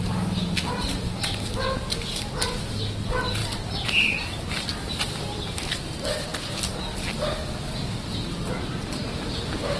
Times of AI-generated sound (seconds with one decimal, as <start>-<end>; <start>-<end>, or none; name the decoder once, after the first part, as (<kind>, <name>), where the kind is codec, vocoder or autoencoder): none